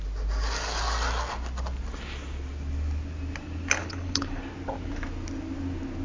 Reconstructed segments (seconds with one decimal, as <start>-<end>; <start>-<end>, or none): 3.8-4.4